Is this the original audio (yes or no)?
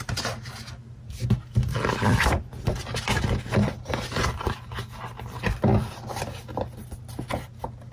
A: yes